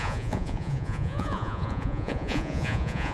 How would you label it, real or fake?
fake